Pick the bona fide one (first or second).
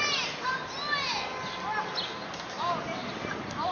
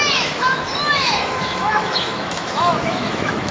first